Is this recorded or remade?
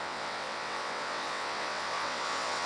remade